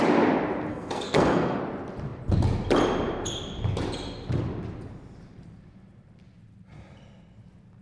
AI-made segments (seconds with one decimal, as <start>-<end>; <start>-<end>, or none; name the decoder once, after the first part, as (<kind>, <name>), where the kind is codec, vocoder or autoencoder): 0.7-1.6 (codec, SNAC)